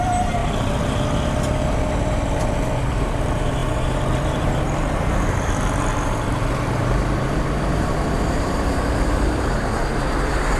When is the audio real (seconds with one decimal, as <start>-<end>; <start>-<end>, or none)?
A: 0.4-2.8